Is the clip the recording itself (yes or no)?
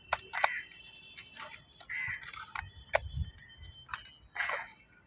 yes